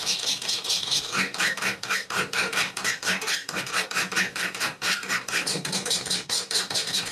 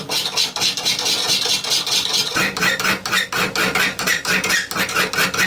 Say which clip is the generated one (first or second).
first